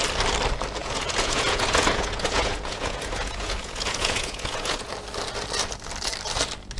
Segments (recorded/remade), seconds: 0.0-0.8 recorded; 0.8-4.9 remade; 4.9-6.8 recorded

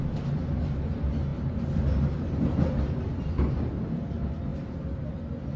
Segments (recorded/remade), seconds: 0.0-5.6 recorded

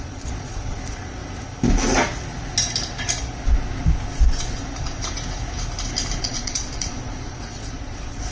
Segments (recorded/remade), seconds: 0.0-1.2 remade; 1.2-6.2 recorded; 6.2-8.3 remade

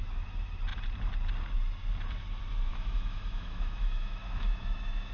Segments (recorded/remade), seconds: 0.0-2.7 recorded; 2.7-5.1 remade